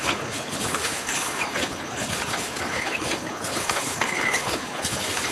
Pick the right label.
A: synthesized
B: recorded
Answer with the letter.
A